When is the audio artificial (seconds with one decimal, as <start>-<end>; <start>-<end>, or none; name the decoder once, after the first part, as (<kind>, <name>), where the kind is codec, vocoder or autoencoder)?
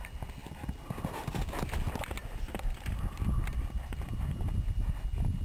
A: 0.4-1.6 (vocoder, BigVGAN v2); 2.2-4.6